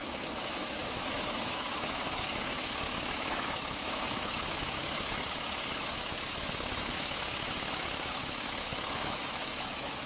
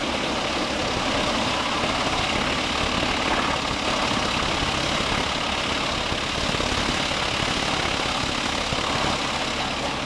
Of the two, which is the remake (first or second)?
first